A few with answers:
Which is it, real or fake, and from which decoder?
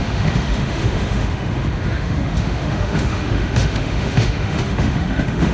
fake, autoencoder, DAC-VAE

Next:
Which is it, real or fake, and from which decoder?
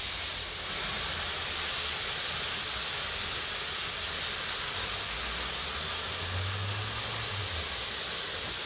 real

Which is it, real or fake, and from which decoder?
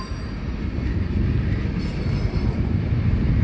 real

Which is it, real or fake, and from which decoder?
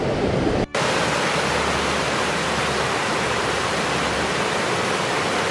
real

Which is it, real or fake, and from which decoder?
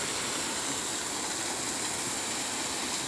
real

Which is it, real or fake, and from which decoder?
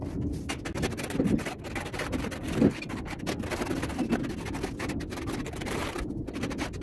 real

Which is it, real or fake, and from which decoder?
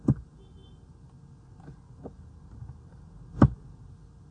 real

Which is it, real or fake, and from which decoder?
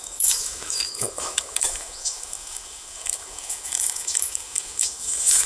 fake, autoencoder, DAC-VAE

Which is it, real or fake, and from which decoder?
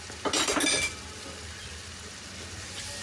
real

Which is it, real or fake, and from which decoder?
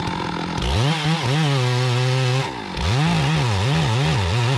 real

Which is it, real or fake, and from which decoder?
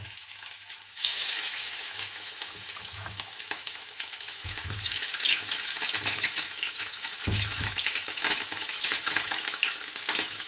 fake, autoencoder, DAC-VAE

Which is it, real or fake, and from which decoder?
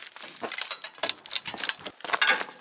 real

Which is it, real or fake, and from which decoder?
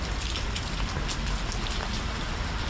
real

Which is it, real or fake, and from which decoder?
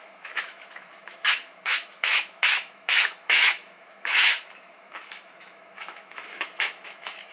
fake, autoencoder, DAC-VAE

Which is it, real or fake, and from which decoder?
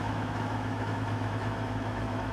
fake, autoencoder, DAC-VAE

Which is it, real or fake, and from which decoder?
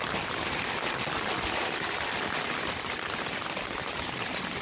real